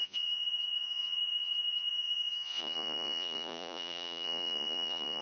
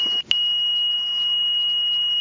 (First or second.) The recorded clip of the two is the second